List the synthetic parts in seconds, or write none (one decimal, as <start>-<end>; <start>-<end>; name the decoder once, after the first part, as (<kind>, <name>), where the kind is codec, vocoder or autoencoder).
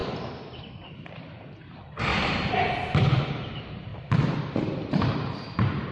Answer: 1.1-2.1 (vocoder, BigVGAN v2); 3.3-3.9; 4.5-5.9